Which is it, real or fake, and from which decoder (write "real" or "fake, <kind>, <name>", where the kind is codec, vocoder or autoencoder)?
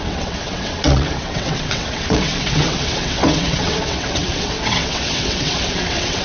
fake, vocoder, WaveNeXt